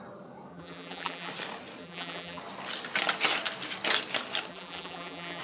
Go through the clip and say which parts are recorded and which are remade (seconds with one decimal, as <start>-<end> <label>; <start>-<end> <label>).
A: 0.0-0.5 recorded; 0.5-1.3 remade; 1.3-1.8 recorded; 1.8-2.4 remade; 2.4-4.5 recorded; 4.5-5.4 remade